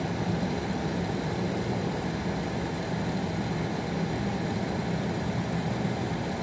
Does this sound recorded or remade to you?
recorded